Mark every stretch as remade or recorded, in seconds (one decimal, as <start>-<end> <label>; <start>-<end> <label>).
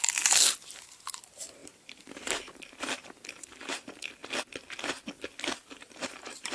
0.0-4.2 remade; 4.2-5.4 recorded; 5.4-6.5 remade